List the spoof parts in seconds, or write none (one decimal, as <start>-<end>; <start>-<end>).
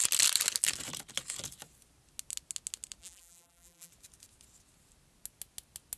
3.0-3.9